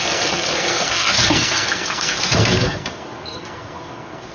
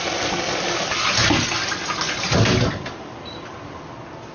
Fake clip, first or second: first